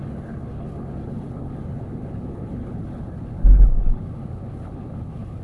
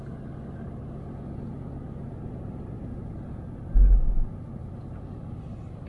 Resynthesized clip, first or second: first